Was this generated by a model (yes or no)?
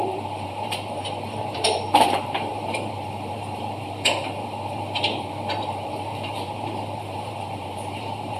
yes